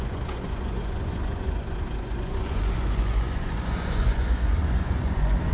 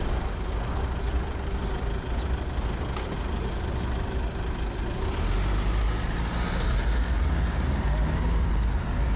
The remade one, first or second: first